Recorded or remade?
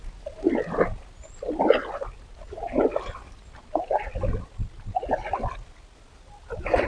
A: recorded